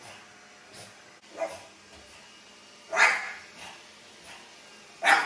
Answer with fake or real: real